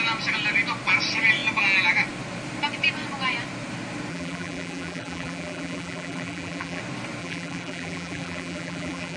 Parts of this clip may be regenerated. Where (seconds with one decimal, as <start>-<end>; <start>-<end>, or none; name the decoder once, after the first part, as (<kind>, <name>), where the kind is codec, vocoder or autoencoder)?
4.1-6.8 (vocoder, BigVGAN v2); 7.2-9.2